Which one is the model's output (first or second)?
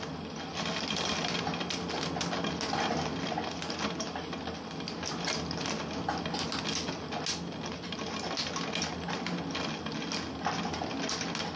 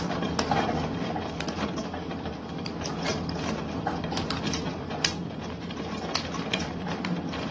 second